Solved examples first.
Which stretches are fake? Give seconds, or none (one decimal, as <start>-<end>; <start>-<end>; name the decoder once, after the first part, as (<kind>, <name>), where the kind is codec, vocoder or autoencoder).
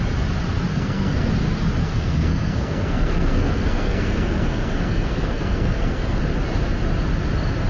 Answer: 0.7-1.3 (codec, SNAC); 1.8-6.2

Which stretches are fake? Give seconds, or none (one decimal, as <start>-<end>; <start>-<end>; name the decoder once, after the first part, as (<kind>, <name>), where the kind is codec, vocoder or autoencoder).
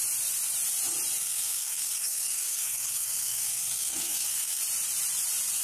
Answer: 1.2-4.6 (codec, SNAC)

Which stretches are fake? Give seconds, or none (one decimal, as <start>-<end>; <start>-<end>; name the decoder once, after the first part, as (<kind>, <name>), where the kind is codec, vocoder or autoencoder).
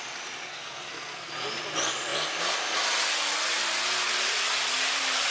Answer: 0.5-1.3 (codec, SNAC)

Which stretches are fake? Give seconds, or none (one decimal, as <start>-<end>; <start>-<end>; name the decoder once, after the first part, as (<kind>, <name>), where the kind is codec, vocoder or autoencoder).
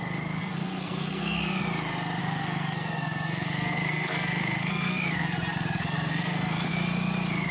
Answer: 0.4-1.6 (codec, SNAC); 2.2-6.7